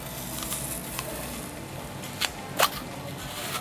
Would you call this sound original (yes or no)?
yes